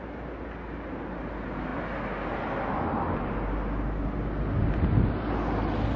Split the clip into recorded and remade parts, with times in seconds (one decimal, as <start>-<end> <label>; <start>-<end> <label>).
0.0-6.0 recorded